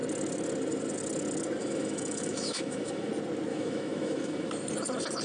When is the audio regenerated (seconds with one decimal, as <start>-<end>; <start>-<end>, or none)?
1.6-3.1; 3.5-4.5